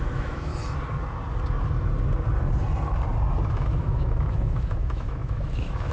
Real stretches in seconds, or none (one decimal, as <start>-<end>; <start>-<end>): 0.5-3.5